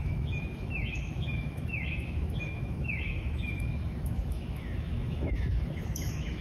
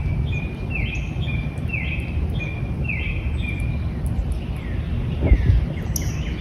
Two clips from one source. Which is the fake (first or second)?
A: first